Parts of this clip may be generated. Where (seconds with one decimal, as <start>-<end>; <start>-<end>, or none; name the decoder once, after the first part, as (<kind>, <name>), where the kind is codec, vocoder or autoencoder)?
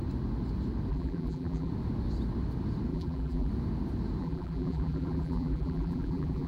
0.9-1.7 (vocoder, BigVGAN v2); 2.9-3.5; 4.2-6.5